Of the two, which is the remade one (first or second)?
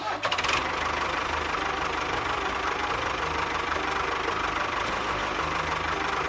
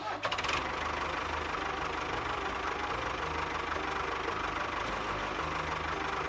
first